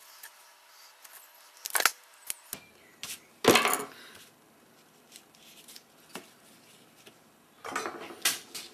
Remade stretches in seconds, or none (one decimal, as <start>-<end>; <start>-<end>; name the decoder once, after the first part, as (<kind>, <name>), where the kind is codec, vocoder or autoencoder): none